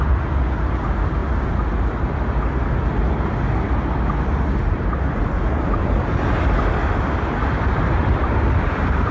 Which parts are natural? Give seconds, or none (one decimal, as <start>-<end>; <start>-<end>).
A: 1.2-5.1; 5.8-8.2